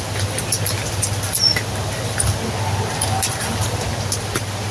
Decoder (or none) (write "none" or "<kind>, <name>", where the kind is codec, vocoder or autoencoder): none